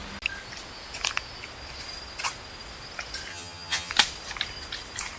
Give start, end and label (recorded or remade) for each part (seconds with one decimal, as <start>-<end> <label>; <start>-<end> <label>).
0.0-3.3 recorded; 3.3-3.9 remade; 3.9-5.2 recorded